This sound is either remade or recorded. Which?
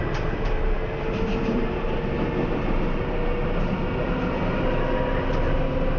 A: recorded